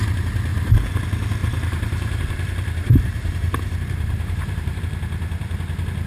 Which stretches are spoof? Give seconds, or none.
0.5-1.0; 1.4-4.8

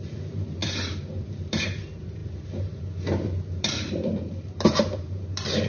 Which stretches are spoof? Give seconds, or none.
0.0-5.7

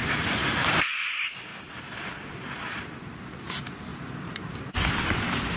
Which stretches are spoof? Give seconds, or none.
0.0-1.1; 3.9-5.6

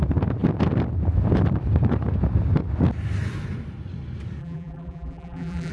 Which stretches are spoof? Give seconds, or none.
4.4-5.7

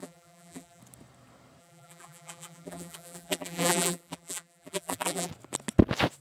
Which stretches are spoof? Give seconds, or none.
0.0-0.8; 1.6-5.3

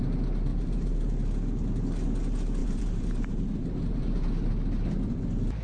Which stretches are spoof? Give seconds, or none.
0.5-1.1; 2.6-4.5